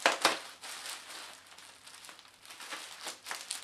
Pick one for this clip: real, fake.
real